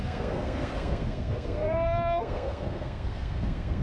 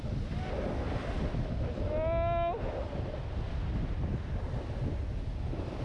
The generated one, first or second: first